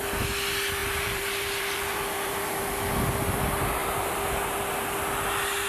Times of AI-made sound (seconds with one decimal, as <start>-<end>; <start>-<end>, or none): 0.8-2.6; 3.8-4.4